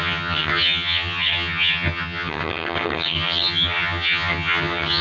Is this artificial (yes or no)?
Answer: yes